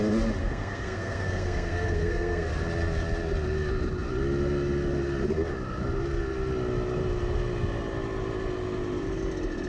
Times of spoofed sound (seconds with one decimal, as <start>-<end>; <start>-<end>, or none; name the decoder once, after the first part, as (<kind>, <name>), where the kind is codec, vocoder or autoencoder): 0.4-2.5 (codec, SNAC)